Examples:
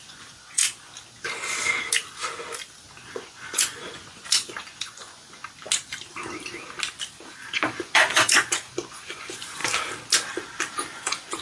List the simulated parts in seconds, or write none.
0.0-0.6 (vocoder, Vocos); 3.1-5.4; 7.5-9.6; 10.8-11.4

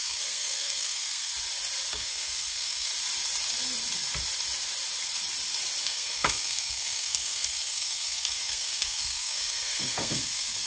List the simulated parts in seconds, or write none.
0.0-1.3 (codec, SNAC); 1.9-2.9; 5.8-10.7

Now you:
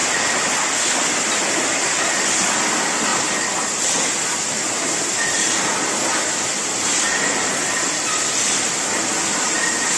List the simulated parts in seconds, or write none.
none

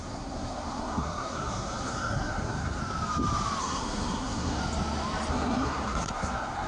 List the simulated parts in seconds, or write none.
0.0-2.8 (codec, SNAC); 3.6-4.6; 5.3-6.7